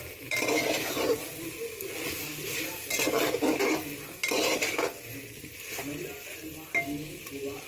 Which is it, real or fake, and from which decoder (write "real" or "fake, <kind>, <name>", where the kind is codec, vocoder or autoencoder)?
real